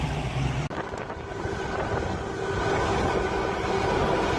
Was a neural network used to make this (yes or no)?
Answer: no